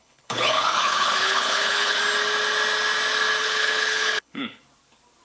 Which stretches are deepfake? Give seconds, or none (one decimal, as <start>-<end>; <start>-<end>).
0.0-2.0; 3.4-4.6